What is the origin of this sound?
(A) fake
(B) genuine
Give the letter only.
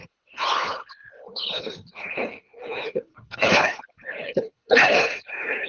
A